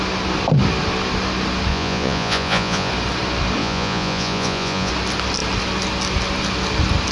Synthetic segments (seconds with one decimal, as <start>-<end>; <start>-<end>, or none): 1.7-2.9; 3.6-4.9